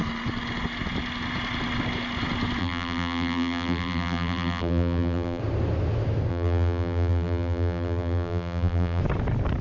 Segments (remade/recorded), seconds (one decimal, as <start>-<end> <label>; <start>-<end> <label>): 0.0-2.6 recorded; 2.6-5.4 remade; 5.4-6.3 recorded; 6.3-9.0 remade; 9.0-9.6 recorded